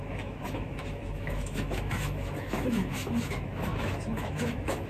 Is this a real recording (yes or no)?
no